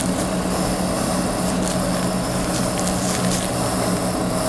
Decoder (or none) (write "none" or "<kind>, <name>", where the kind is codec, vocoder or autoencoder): none